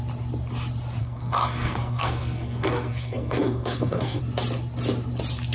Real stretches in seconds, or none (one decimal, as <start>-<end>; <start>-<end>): 0.0-1.0; 4.2-5.5